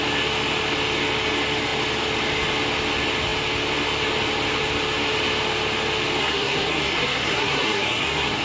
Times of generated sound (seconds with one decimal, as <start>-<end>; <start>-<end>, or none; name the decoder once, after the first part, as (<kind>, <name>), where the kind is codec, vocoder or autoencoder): 6.2-8.4 (codec, SNAC)